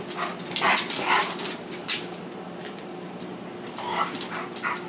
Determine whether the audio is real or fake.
real